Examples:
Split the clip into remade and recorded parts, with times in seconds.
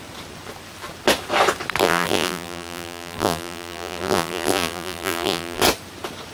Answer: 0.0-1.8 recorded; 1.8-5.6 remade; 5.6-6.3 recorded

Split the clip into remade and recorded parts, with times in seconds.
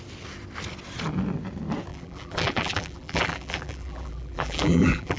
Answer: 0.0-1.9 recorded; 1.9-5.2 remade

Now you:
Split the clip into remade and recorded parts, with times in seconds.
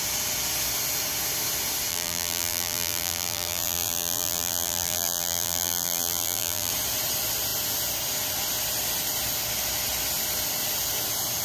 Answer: 0.0-1.9 recorded; 1.9-6.7 remade; 6.7-11.4 recorded